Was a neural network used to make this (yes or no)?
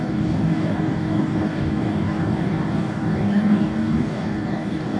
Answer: yes